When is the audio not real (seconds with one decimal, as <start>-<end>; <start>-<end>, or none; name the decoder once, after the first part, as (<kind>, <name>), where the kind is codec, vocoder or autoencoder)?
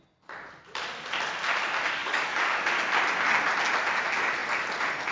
2.0-2.7 (codec, DAC)